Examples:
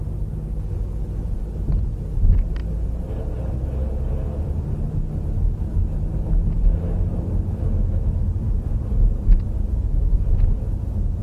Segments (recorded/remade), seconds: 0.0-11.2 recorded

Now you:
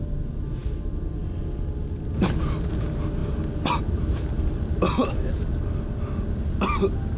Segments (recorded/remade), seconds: 0.0-7.2 recorded

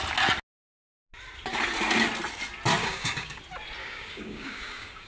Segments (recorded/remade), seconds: 0.0-2.8 recorded; 2.8-3.4 remade; 3.4-3.8 recorded; 3.8-5.1 remade

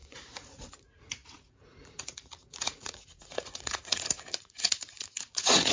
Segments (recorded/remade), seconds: 0.0-5.7 remade

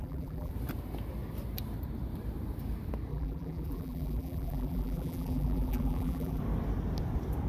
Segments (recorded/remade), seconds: 0.0-0.5 remade; 0.5-3.1 recorded; 3.1-6.4 remade; 6.4-7.5 recorded

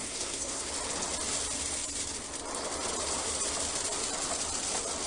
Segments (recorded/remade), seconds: 0.0-0.7 remade; 0.7-5.1 recorded

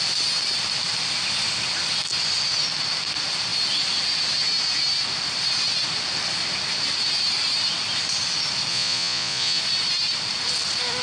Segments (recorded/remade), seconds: 0.0-8.7 recorded; 8.7-9.6 remade; 9.6-11.0 recorded

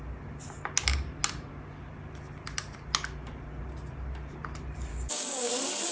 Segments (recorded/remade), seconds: 0.0-4.9 recorded; 4.9-5.5 remade; 5.5-5.9 recorded